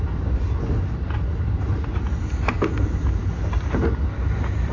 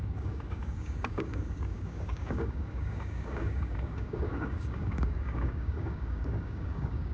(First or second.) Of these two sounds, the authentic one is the first